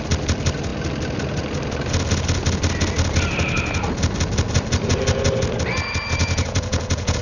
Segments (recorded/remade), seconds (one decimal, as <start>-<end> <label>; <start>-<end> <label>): 0.0-6.2 recorded; 6.2-7.2 remade